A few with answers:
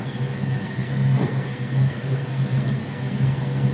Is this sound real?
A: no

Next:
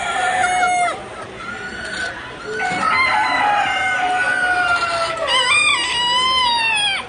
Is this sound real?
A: yes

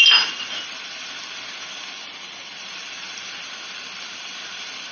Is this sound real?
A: yes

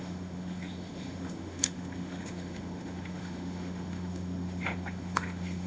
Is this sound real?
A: no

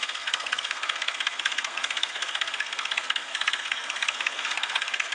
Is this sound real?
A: no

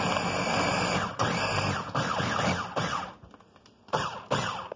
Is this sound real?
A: yes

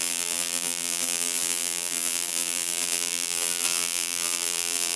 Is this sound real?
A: no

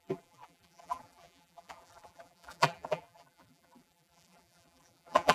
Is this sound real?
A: no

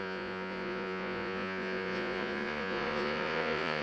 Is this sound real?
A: no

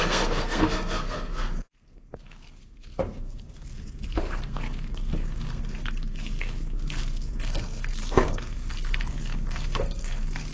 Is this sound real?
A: no